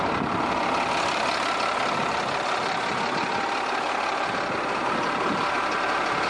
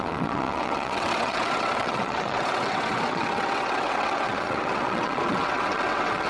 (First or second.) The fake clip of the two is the second